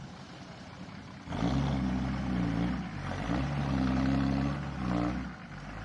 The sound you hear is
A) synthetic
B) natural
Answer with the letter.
B